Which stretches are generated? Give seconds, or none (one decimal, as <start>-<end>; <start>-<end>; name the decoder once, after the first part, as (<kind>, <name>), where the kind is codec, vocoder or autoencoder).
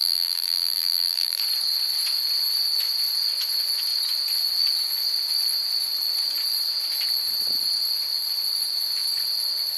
0.0-1.4 (vocoder, BigVGAN v2)